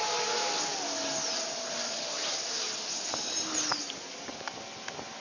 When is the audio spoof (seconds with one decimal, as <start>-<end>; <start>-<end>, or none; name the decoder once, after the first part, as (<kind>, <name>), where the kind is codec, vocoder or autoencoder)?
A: none